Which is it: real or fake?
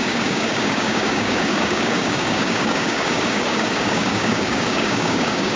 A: fake